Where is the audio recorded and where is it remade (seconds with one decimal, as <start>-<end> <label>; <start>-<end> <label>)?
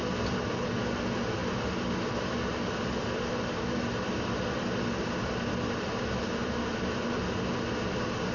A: 0.0-6.4 recorded; 6.4-7.2 remade; 7.2-8.3 recorded